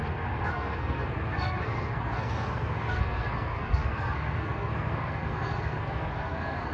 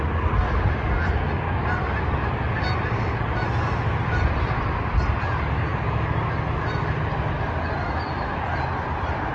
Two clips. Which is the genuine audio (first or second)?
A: second